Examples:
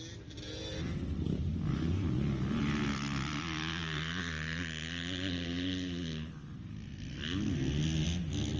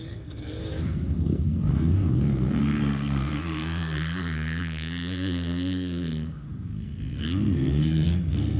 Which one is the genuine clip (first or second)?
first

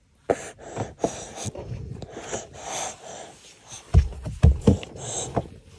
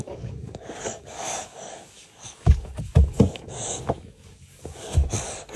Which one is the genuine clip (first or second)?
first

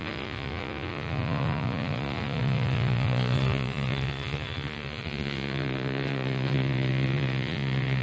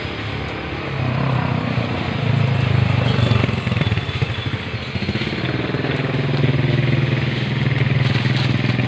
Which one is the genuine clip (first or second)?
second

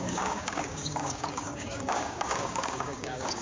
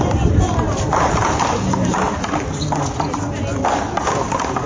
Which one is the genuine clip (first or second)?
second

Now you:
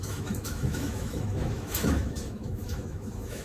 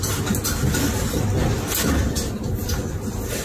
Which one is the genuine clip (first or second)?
second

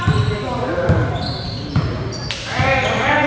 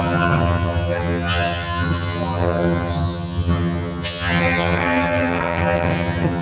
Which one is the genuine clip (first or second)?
first